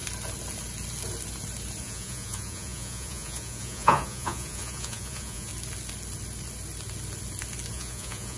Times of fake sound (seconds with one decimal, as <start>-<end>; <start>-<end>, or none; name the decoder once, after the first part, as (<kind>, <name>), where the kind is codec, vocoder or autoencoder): 1.8-5.5 (vocoder, Vocos); 7.7-8.4